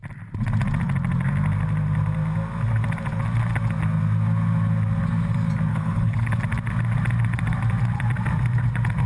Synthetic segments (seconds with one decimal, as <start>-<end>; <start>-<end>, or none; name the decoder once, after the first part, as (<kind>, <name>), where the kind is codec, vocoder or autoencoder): 5.7-6.4 (codec, HILCodec)